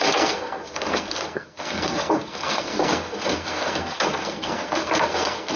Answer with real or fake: fake